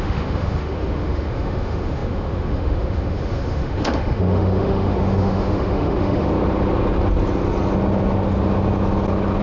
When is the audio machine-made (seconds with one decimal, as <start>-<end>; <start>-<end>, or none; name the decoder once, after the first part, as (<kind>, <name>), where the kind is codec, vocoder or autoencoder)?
0.0-6.3 (autoencoder, DAC-VAE)